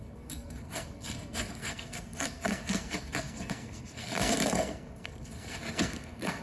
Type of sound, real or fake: fake